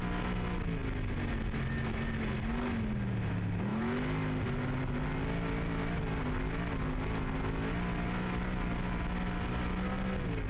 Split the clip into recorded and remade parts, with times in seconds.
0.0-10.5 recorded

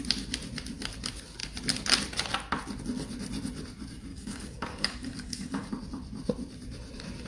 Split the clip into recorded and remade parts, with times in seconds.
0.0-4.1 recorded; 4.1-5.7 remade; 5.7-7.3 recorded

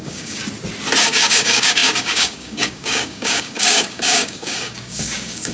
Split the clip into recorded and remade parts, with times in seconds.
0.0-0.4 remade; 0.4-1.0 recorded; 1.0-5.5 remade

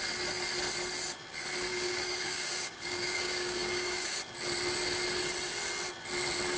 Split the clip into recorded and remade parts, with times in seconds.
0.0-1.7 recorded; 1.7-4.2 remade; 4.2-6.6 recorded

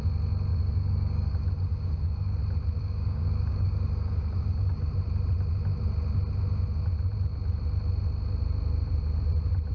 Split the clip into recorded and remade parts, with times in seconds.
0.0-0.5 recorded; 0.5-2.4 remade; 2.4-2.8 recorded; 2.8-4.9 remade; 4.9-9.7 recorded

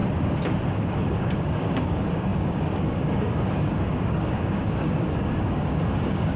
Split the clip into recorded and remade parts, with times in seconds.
0.0-1.0 recorded; 1.0-6.4 remade

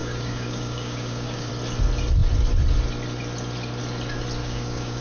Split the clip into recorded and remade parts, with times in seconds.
0.0-1.5 remade; 1.5-4.4 recorded; 4.4-5.0 remade